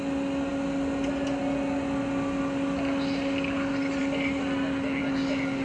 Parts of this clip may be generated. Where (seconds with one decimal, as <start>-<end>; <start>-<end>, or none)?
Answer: none